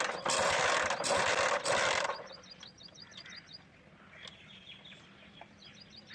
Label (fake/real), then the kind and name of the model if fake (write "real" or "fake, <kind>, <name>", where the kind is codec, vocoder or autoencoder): real